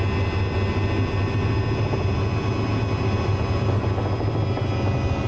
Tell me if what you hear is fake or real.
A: real